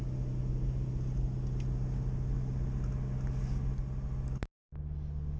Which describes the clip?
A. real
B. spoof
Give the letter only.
A